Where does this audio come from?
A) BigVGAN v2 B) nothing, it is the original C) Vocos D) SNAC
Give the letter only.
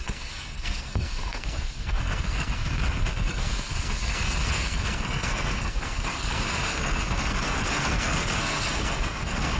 D